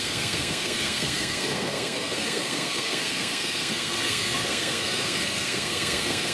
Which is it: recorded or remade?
remade